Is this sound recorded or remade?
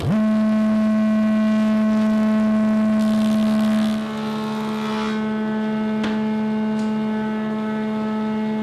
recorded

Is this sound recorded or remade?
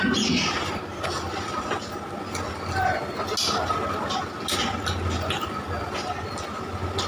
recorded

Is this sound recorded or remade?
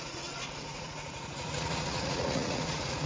remade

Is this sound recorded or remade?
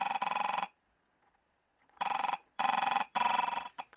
remade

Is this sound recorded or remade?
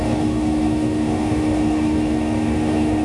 remade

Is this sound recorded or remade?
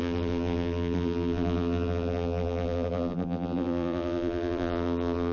remade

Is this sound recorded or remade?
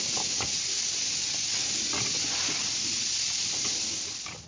recorded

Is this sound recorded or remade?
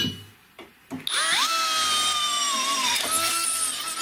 recorded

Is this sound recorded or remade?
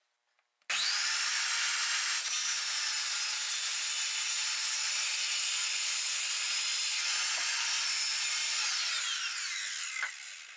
recorded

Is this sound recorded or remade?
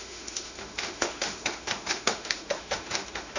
remade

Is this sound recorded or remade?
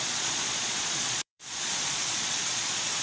remade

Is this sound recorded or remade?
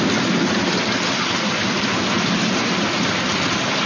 recorded